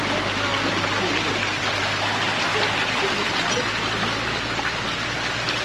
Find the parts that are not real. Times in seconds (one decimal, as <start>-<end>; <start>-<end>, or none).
none